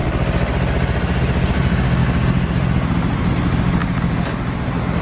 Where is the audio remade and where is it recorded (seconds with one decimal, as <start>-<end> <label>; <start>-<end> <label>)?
0.0-5.0 recorded